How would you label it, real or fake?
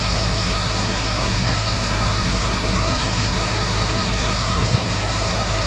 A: fake